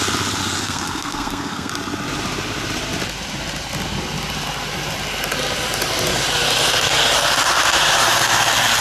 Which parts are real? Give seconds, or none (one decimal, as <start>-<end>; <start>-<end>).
0.0-0.6; 1.7-8.8